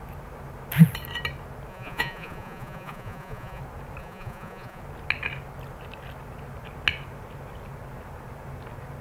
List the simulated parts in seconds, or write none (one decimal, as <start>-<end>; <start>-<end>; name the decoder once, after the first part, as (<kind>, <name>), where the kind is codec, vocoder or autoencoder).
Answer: 1.7-3.6 (vocoder, Vocos); 4.0-4.8